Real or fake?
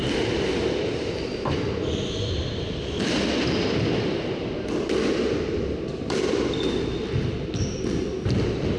real